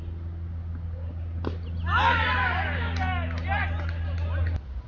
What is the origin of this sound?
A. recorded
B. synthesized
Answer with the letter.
A